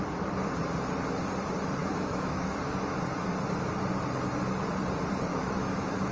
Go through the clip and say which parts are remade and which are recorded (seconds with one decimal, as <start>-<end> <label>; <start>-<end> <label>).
0.0-1.8 recorded; 1.8-2.6 remade; 2.6-5.3 recorded; 5.3-6.1 remade